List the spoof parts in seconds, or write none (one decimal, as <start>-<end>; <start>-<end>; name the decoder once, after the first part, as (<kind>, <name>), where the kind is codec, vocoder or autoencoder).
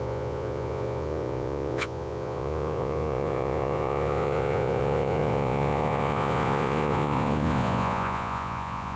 0.0-9.0 (vocoder, Vocos)